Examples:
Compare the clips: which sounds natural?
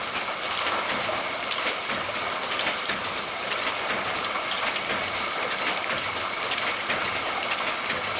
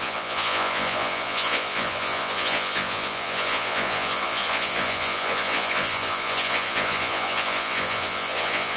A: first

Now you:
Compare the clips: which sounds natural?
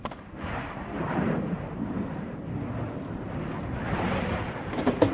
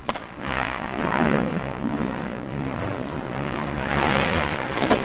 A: first